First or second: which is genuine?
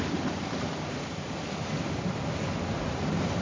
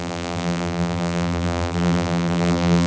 first